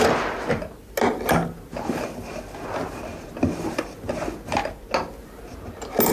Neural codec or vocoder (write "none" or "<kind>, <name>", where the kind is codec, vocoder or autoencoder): none